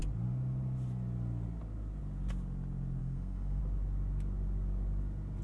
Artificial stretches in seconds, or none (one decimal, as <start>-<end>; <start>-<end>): 3.0-3.6